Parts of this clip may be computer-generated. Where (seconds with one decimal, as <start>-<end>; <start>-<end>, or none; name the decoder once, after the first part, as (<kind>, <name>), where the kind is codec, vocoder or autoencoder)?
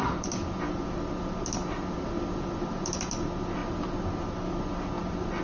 none